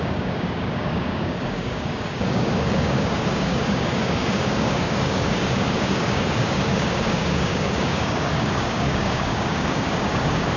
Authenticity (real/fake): fake